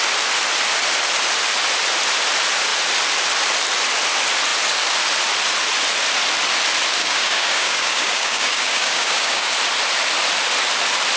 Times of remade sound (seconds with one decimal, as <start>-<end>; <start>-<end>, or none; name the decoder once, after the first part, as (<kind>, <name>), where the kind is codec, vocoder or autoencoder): 7.0-9.5 (codec, DAC)